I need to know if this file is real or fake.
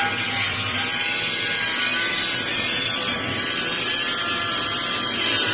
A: fake